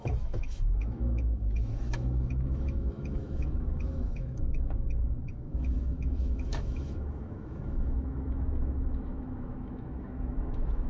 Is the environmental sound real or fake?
fake